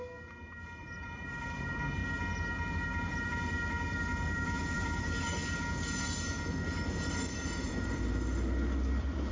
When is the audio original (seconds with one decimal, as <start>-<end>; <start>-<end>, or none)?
0.0-0.8; 2.0-2.7; 5.4-7.1